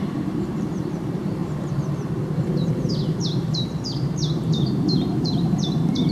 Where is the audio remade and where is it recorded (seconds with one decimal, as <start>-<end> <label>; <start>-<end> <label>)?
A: 0.0-6.1 remade